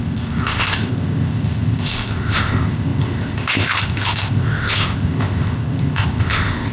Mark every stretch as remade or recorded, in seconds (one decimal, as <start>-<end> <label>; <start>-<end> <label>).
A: 0.0-6.7 remade